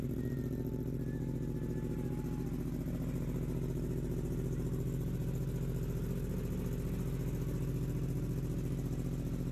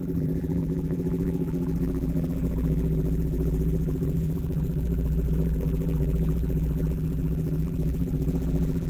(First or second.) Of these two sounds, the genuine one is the first